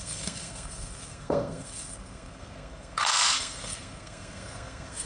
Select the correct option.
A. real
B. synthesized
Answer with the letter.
B